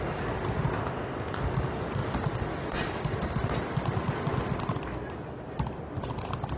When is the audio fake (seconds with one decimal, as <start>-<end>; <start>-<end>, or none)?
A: 0.8-1.4